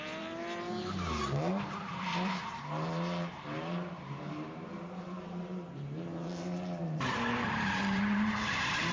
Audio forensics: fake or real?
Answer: fake